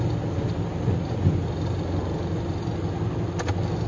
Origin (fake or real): real